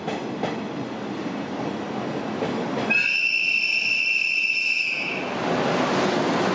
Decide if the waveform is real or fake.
real